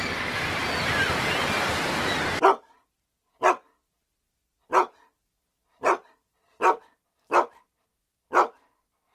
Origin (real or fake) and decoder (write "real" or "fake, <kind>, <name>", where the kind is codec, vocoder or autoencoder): real